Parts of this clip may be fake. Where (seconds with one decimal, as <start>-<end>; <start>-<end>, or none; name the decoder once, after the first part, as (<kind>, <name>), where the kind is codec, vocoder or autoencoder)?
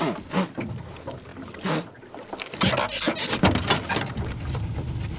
none